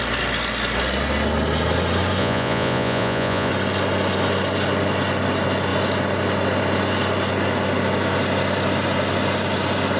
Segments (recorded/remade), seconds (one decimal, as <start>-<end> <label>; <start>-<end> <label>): 0.0-2.2 recorded; 2.2-3.5 remade; 3.5-10.0 recorded